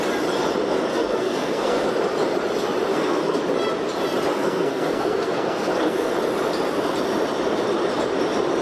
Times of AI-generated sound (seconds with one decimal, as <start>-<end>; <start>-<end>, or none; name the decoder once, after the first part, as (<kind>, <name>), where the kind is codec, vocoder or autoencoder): 0.9-1.9 (codec, SNAC); 2.9-3.4; 4.3-6.1